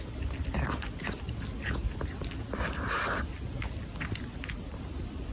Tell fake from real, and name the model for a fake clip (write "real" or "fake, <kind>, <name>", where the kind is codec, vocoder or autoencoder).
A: real